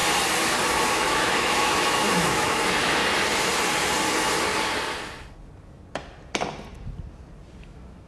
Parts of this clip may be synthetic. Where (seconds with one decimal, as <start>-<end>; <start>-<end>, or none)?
0.8-3.0; 7.6-8.1